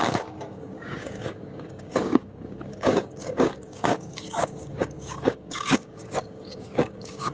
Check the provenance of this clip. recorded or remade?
remade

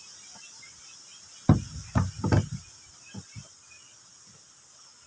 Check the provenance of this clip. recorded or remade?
recorded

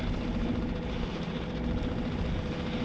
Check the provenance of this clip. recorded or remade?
recorded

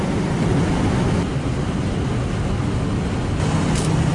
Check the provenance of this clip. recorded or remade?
recorded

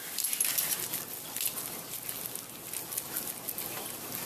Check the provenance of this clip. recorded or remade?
recorded